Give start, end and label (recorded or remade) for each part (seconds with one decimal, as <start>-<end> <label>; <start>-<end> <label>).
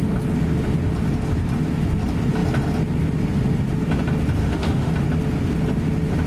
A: 0.0-4.4 recorded; 4.4-4.9 remade; 4.9-6.3 recorded